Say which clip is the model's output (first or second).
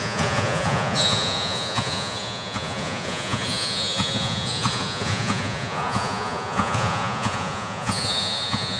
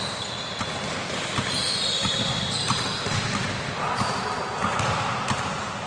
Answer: first